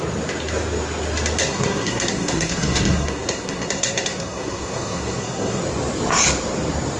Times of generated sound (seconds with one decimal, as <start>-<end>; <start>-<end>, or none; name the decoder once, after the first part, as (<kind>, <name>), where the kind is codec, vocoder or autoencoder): 1.4-5.6 (codec, SNAC)